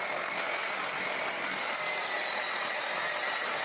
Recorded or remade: recorded